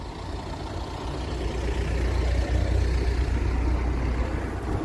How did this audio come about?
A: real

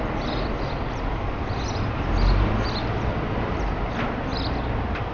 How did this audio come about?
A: real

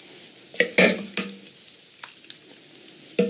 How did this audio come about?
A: real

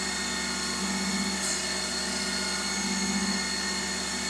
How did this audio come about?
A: real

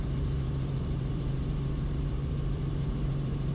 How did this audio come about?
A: fake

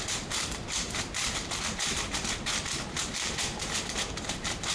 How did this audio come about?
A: fake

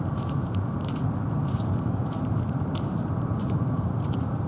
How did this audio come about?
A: fake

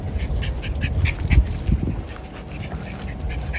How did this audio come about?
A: real